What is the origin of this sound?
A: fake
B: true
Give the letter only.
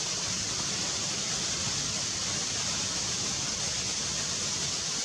B